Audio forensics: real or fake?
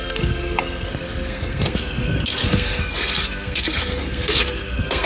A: fake